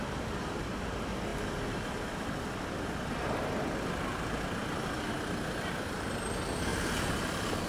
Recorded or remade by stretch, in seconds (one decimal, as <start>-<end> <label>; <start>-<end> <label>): 0.0-6.7 recorded; 6.7-7.7 remade